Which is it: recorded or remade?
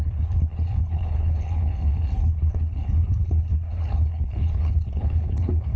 remade